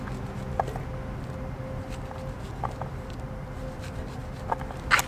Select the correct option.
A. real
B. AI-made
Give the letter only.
A